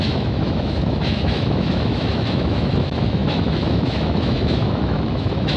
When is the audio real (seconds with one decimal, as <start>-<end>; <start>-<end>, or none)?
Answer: none

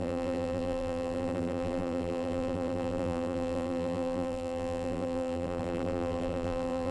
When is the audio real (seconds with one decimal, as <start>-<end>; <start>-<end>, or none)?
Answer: none